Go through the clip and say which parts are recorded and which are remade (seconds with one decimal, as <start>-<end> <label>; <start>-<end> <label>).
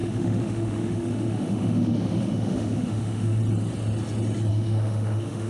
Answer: 0.0-3.4 remade; 3.4-4.5 recorded; 4.5-5.5 remade